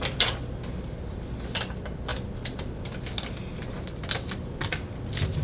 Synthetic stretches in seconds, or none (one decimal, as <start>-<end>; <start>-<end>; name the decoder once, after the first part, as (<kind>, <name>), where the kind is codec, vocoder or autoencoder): none